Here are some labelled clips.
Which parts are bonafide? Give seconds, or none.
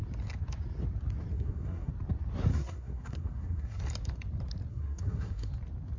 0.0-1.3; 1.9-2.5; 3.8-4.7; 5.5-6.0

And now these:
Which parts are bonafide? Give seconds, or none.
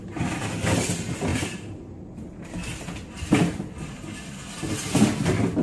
0.0-5.6